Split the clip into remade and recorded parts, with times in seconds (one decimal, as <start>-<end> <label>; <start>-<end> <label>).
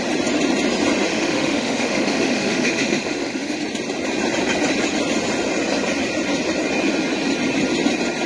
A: 0.0-1.1 recorded; 1.1-3.6 remade; 3.6-8.3 recorded